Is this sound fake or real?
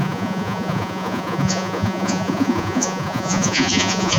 fake